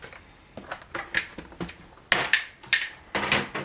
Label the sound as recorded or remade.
recorded